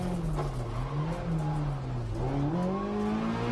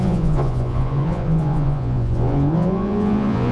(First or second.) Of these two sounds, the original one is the first